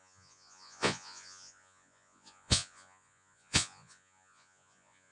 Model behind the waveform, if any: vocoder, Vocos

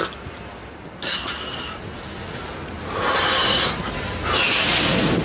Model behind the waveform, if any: none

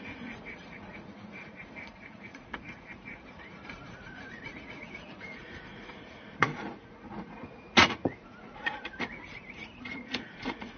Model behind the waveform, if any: vocoder, Vocos